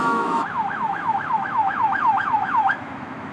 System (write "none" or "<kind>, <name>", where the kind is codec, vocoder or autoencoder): autoencoder, DAC-VAE